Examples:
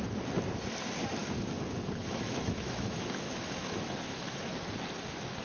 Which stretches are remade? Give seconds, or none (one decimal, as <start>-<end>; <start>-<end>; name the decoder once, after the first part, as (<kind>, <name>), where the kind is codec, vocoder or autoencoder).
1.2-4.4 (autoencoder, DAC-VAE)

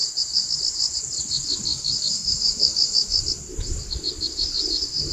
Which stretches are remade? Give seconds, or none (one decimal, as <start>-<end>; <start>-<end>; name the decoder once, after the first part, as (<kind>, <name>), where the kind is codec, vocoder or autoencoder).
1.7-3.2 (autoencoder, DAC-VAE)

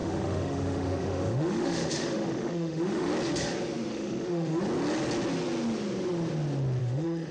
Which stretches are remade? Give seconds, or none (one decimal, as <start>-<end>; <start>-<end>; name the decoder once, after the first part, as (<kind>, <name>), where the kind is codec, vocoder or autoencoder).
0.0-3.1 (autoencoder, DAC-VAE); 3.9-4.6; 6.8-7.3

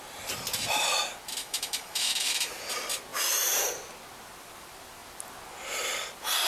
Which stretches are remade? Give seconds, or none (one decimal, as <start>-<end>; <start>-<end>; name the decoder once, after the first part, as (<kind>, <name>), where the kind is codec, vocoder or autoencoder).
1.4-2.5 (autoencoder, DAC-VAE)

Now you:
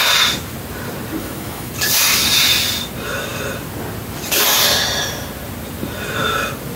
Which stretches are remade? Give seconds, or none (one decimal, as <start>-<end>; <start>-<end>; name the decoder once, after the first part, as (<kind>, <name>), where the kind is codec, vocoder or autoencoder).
1.2-1.7 (autoencoder, DAC-VAE)